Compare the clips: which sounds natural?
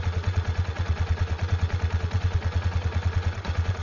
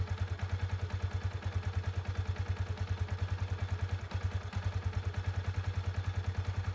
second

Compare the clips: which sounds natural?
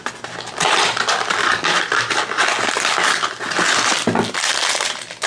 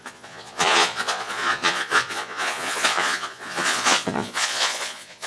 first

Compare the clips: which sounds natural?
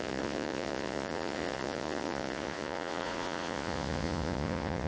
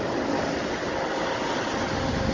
second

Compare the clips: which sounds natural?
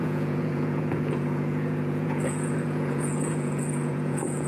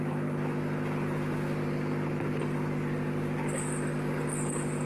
second